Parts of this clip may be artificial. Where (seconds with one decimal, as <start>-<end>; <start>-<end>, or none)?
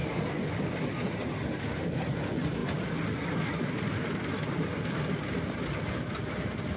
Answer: none